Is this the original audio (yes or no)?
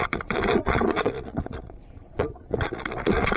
no